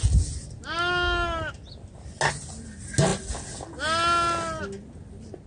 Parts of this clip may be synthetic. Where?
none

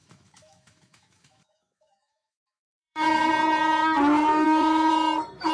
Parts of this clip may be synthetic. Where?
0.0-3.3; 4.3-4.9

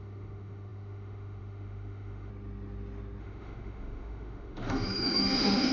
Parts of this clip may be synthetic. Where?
0.0-2.3; 3.2-5.7

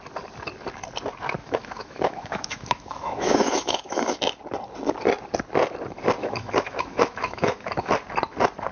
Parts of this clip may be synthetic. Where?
1.4-4.2; 6.2-7.9

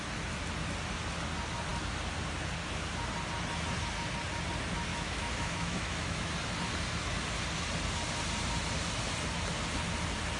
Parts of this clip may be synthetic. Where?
4.9-6.3

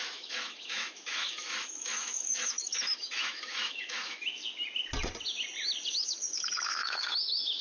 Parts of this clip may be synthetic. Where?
0.0-4.4; 5.9-7.6